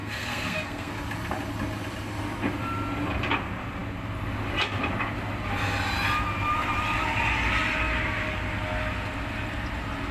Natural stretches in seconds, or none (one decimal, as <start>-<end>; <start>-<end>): 0.9-10.1

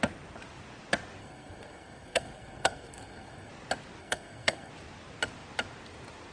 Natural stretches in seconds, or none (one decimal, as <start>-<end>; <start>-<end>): 0.0-1.2; 3.5-4.0; 4.7-6.3

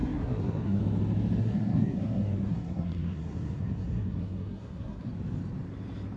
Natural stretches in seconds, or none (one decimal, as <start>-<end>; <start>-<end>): 0.8-1.4; 5.1-6.2

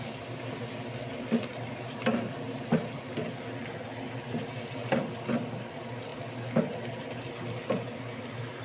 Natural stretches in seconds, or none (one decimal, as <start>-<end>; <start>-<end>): 0.0-8.6

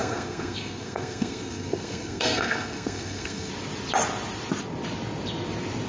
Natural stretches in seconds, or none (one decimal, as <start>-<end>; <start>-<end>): 3.5-5.9

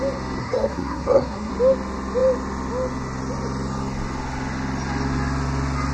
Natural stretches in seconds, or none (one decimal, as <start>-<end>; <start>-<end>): 0.0-0.4; 1.5-5.9

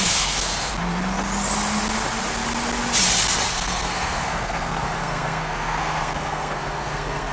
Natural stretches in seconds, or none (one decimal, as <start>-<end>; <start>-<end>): 0.7-3.5